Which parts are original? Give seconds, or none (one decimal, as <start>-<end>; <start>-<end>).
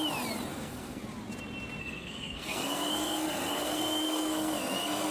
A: 0.0-0.5; 1.0-1.8